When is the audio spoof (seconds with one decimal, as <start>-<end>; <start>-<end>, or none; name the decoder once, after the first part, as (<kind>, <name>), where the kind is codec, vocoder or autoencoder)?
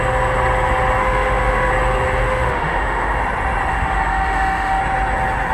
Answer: 1.0-1.7 (autoencoder, DAC-VAE); 2.2-3.2; 3.7-4.8